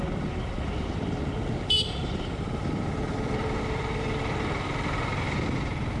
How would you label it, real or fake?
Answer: fake